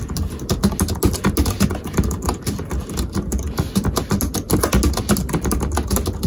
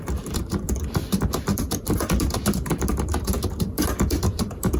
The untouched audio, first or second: first